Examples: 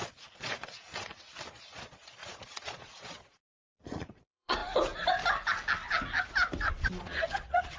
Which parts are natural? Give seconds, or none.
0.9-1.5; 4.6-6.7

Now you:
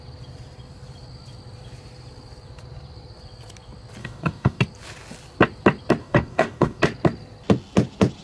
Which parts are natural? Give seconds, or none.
0.0-4.0; 4.6-6.0; 6.8-8.2

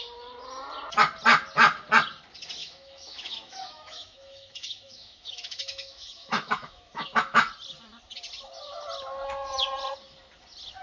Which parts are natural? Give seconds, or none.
0.0-2.6; 7.5-10.8

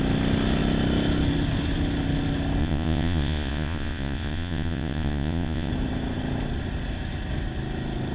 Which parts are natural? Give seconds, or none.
0.0-2.6; 5.7-8.1

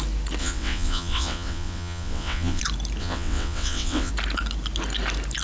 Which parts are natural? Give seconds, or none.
0.0-0.4; 2.6-3.0; 4.1-5.4

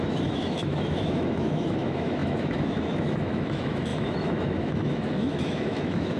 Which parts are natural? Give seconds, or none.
none

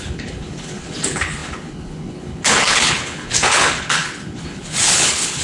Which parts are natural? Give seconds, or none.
none